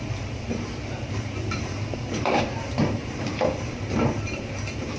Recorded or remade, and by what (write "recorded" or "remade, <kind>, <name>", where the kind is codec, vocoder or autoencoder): remade, vocoder, BigVGAN v2